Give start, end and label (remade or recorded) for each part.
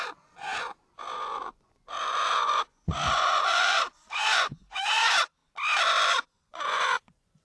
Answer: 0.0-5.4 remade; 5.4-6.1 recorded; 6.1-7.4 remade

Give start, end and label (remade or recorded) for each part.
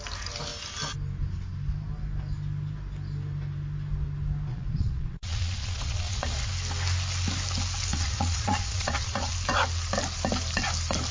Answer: 0.0-4.5 recorded; 4.5-6.5 remade; 6.5-7.9 recorded; 7.9-9.3 remade; 9.3-11.1 recorded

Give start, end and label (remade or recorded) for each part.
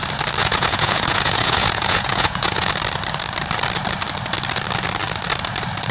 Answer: 0.0-0.4 recorded; 0.4-2.7 remade; 2.7-5.9 recorded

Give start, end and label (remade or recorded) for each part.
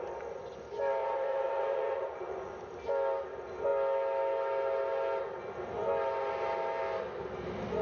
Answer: 0.0-1.0 recorded; 1.0-2.5 remade; 2.5-7.8 recorded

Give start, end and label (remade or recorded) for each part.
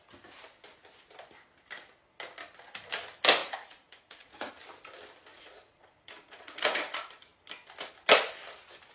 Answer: 0.0-3.4 recorded; 3.4-4.5 remade; 4.5-5.3 recorded; 5.3-6.8 remade; 6.8-8.9 recorded